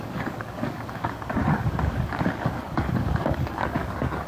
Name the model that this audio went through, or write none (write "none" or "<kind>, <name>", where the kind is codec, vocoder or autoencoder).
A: codec, DAC